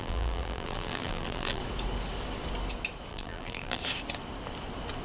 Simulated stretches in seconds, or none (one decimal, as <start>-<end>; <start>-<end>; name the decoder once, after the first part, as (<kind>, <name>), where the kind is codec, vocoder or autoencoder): 0.0-1.6 (vocoder, BigVGAN v2); 3.1-3.8